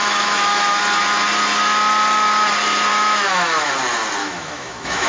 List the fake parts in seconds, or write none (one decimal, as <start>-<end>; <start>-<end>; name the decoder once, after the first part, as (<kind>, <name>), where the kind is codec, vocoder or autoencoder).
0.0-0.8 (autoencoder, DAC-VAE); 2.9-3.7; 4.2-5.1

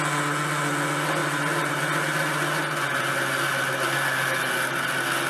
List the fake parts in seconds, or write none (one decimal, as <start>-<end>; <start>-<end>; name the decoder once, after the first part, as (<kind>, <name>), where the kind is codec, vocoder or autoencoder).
none

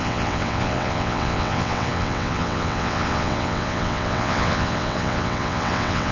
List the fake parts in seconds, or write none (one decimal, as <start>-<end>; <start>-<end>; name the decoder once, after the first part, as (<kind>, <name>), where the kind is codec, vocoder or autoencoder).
0.0-6.1 (vocoder, WaveNeXt)